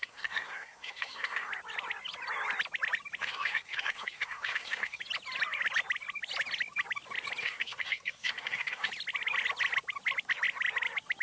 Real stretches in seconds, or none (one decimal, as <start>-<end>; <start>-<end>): 1.5-3.2; 5.0-7.4; 8.9-11.2